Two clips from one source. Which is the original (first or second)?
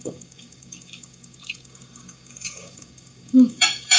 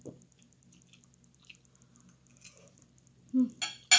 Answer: second